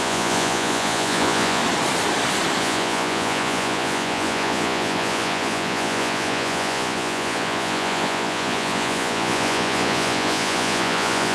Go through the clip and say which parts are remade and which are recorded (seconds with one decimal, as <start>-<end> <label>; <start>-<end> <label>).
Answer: 0.0-1.6 remade; 1.6-2.6 recorded; 2.6-11.3 remade